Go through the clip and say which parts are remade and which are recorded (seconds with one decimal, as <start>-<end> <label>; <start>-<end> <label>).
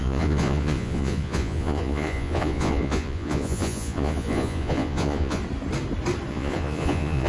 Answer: 0.0-5.4 remade; 5.4-6.3 recorded; 6.3-7.3 remade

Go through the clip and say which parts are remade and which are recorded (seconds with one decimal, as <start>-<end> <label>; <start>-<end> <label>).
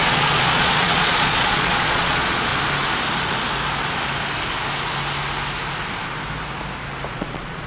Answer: 0.0-2.5 remade; 2.5-7.1 recorded; 7.1-7.7 remade